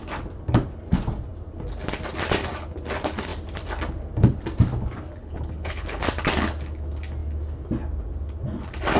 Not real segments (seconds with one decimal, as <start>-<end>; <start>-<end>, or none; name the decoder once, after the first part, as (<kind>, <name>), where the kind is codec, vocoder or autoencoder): 5.2-6.0 (codec, HILCodec)